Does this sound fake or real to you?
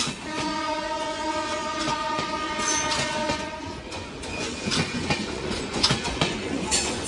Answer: fake